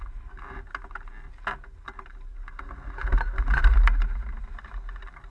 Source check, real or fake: real